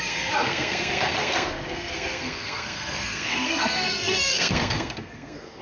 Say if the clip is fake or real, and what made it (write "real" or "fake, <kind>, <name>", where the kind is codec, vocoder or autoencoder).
fake, codec, SNAC